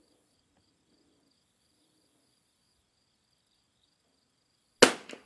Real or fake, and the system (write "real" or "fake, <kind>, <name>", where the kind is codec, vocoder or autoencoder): real